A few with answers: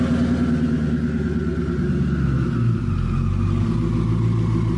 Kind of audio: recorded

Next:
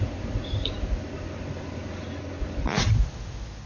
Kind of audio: recorded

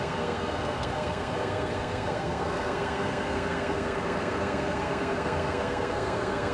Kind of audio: remade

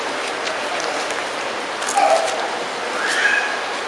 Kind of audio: recorded